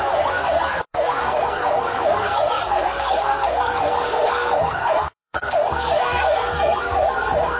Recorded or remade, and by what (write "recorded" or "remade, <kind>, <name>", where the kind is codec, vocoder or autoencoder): remade, codec, SNAC